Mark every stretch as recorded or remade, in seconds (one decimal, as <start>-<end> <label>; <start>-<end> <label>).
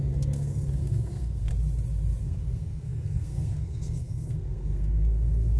0.0-1.5 remade; 1.5-2.2 recorded; 2.2-5.6 remade